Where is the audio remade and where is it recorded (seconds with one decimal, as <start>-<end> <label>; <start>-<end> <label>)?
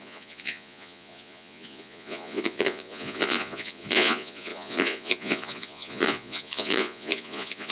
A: 0.0-7.7 remade